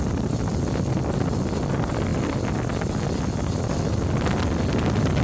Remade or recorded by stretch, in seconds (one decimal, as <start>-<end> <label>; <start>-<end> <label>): 0.0-5.2 recorded